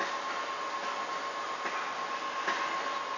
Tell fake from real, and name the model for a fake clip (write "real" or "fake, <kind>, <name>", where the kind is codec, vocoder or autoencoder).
real